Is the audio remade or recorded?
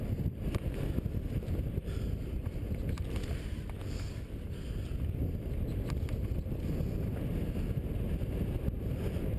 recorded